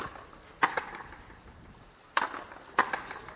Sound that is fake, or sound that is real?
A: real